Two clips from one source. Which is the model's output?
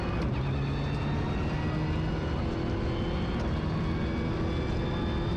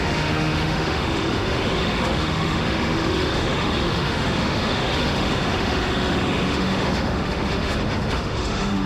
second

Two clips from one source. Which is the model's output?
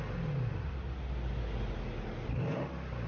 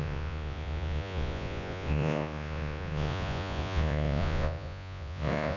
second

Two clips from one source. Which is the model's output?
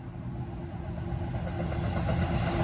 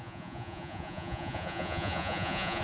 second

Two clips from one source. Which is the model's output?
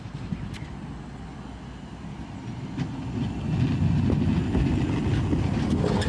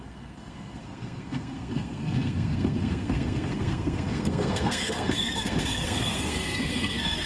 second